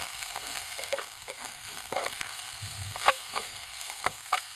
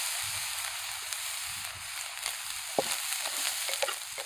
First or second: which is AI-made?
first